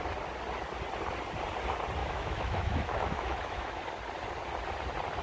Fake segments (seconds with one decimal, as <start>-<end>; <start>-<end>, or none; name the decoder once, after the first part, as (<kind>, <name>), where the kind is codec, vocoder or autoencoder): 2.0-3.8 (autoencoder, DAC-VAE)